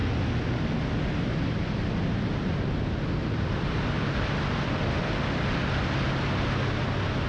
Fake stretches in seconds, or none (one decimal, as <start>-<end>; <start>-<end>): 3.2-4.7